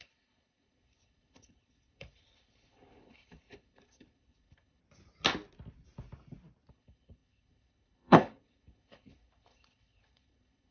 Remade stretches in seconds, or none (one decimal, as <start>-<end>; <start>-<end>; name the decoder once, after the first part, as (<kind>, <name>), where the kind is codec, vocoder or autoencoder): 0.0-4.8 (codec, HILCodec); 6.7-10.7